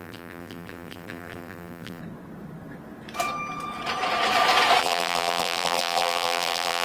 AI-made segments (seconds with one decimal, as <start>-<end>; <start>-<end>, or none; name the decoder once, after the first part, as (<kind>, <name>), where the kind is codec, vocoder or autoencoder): 0.0-2.0 (vocoder, BigVGAN v2); 4.8-6.8